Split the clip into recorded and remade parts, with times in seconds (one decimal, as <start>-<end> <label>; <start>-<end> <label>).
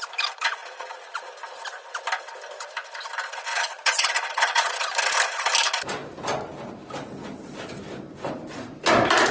0.0-0.6 recorded; 0.6-1.3 remade; 1.3-3.5 recorded; 3.5-4.9 remade; 4.9-9.3 recorded